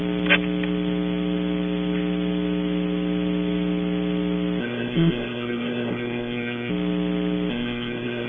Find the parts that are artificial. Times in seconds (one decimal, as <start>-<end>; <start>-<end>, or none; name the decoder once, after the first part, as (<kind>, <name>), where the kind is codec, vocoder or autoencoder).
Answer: 4.6-6.7 (codec, SNAC); 7.5-8.3